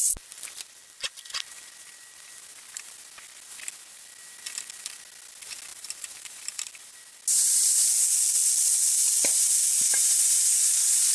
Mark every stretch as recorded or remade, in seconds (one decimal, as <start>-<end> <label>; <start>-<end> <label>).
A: 0.0-5.7 recorded; 5.7-6.7 remade; 6.7-7.3 recorded; 7.3-7.9 remade; 7.9-9.9 recorded; 9.9-11.1 remade